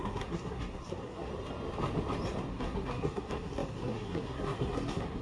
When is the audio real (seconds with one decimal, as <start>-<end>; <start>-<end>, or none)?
1.3-2.5